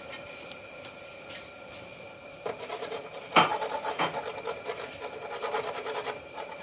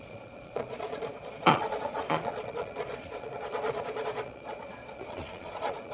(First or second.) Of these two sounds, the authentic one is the first